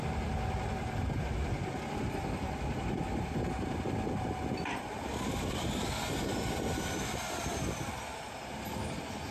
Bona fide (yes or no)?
yes